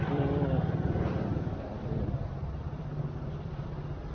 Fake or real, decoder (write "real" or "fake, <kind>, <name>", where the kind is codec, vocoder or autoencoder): fake, vocoder, BigVGAN v2